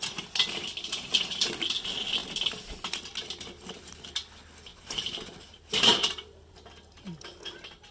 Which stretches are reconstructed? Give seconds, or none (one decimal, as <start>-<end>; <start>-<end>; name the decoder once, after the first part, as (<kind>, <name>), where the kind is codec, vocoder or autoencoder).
4.7-6.7 (vocoder, BigVGAN v2)